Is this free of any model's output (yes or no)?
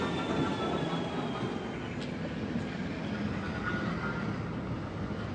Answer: yes